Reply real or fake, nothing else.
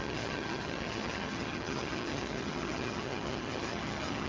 fake